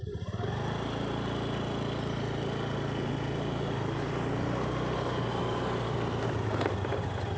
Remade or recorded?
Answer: recorded